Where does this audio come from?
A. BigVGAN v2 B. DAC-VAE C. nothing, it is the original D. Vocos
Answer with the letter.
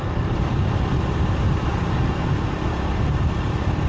C